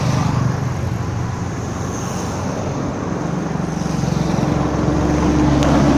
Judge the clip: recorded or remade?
recorded